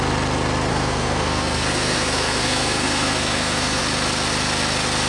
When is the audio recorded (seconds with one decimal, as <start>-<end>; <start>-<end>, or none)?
0.0-0.7; 3.8-5.1